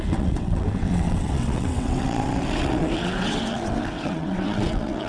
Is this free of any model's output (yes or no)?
no